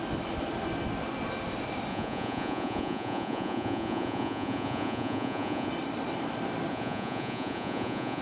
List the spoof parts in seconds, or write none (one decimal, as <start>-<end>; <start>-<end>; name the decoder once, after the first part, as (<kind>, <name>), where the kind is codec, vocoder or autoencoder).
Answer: 1.9-5.7 (vocoder, Vocos); 6.7-8.2